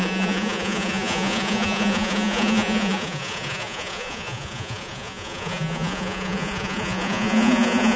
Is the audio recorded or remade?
remade